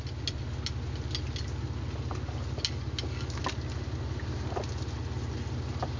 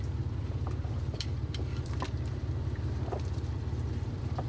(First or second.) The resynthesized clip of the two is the second